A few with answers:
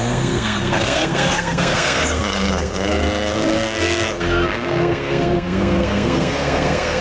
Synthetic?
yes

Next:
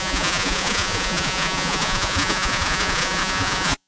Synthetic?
yes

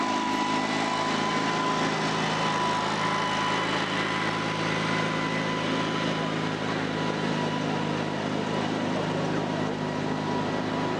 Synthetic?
no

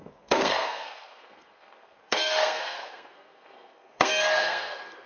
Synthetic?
yes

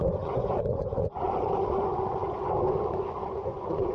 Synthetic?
yes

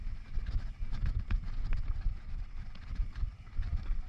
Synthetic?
no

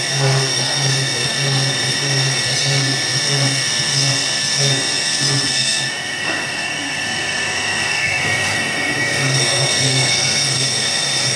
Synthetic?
yes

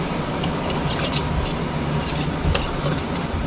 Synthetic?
no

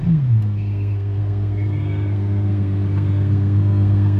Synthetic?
yes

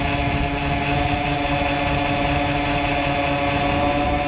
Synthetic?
no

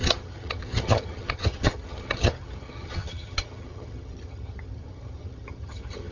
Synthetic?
yes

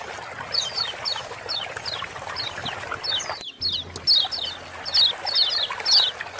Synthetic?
no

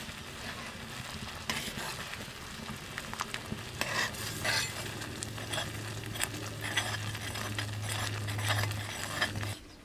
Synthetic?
no